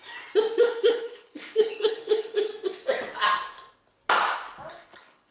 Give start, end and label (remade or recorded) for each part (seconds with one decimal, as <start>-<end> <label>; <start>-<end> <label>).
0.0-0.6 recorded; 0.6-2.5 remade; 2.5-4.7 recorded; 4.7-5.3 remade